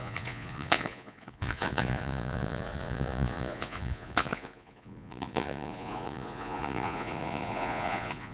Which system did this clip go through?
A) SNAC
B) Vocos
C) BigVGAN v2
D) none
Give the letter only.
B